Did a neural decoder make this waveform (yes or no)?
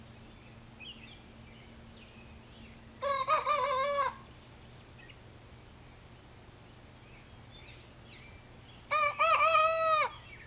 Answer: no